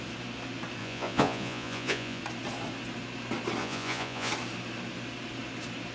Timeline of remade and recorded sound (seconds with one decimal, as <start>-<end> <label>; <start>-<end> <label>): 0.0-0.8 recorded; 0.8-2.2 remade; 2.2-3.6 recorded; 3.6-4.3 remade; 4.3-5.9 recorded